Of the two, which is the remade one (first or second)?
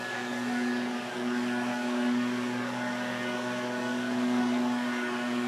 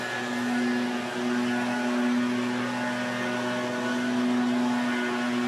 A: first